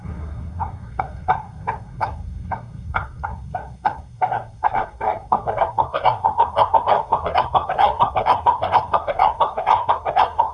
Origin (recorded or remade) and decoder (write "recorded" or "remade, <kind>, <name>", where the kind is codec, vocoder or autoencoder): remade, codec, SNAC